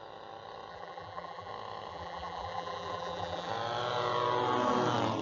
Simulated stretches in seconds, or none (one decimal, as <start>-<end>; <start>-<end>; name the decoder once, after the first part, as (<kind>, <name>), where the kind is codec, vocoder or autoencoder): 0.7-1.5 (vocoder, BigVGAN v2); 1.9-3.5